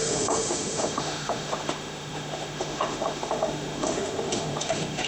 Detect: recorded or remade remade